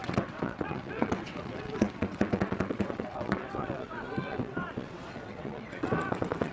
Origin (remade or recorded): remade